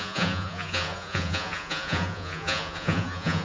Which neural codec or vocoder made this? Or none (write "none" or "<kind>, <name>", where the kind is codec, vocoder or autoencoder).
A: vocoder, Vocos